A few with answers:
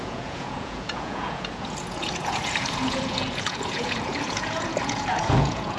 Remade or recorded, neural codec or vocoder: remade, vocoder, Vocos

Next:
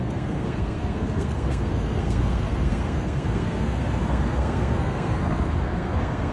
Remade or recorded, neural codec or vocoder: remade, codec, SNAC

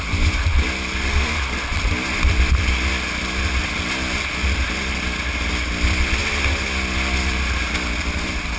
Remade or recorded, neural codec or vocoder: recorded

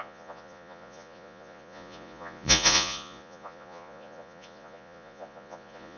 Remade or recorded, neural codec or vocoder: remade, vocoder, Vocos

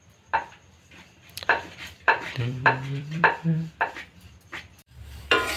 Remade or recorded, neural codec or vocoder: remade, vocoder, BigVGAN v2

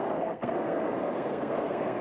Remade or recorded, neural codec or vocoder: remade, codec, SNAC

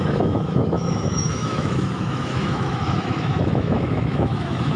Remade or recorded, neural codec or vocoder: remade, autoencoder, DAC-VAE